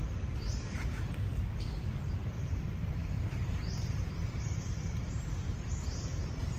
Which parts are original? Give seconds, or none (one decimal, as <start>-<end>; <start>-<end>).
0.0-2.2